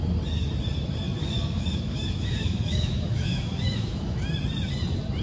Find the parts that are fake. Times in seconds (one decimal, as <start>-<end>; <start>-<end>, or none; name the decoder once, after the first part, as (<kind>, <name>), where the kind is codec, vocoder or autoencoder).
1.2-4.3 (autoencoder, DAC-VAE)